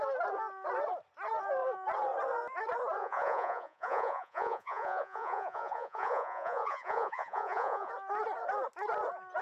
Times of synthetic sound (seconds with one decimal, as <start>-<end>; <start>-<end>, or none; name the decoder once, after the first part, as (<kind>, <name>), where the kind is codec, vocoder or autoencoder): 3.0-7.9 (vocoder, Vocos)